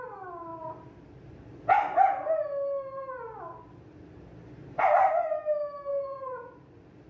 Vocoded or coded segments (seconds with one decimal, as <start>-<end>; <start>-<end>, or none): 5.9-6.5